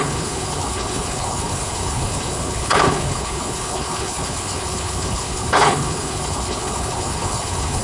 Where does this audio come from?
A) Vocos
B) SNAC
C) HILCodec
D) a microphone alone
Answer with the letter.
C